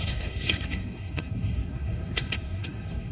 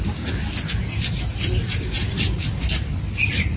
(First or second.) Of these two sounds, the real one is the second